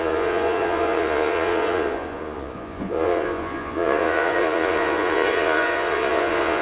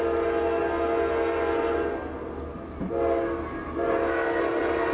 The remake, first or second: first